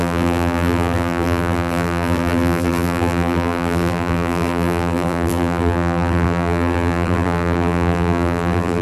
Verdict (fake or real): fake